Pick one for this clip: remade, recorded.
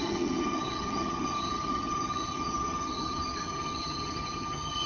remade